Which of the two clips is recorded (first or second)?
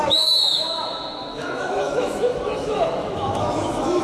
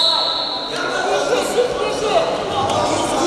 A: second